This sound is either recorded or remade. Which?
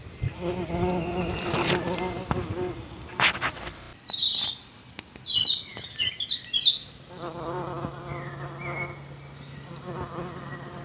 recorded